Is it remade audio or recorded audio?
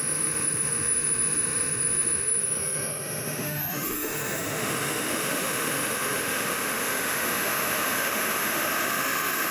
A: remade